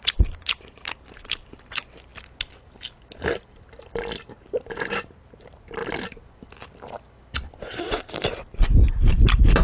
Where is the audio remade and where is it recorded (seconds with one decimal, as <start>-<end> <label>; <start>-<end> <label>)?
0.0-2.1 remade; 2.1-4.3 recorded; 4.3-5.8 remade; 5.8-7.8 recorded; 7.8-9.6 remade

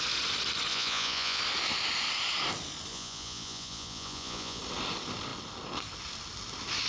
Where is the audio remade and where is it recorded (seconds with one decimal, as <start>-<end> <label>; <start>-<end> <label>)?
0.0-0.7 recorded; 0.7-1.4 remade; 1.4-2.9 recorded; 2.9-4.6 remade; 4.6-6.9 recorded